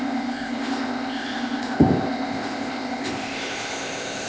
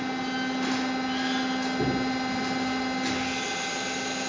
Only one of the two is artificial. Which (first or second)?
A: first